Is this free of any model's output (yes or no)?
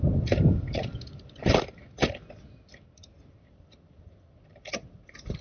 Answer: yes